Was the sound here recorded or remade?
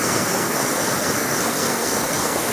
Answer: remade